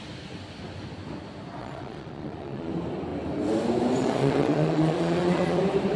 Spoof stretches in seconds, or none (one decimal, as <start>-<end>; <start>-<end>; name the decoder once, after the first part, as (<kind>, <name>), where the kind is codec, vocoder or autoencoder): 1.6-2.7 (vocoder, Vocos); 4.0-5.6